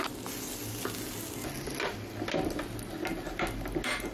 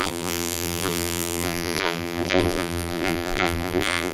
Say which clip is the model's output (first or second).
second